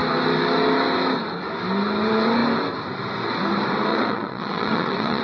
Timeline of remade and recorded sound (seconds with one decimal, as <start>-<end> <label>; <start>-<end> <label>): 0.0-3.9 recorded; 3.9-5.2 remade